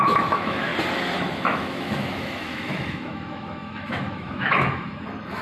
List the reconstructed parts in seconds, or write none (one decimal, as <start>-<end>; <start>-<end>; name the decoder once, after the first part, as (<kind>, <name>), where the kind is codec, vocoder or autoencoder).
0.0-0.7 (autoencoder, DAC-VAE); 1.2-5.4